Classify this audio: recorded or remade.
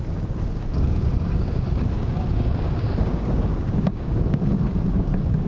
remade